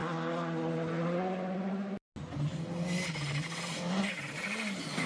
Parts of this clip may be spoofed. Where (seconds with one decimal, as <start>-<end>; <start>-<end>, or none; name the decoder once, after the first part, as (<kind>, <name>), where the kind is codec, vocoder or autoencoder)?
none